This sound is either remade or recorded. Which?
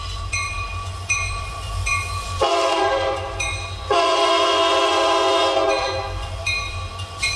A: remade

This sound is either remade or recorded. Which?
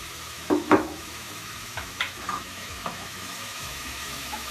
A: remade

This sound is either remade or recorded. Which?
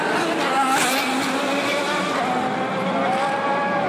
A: recorded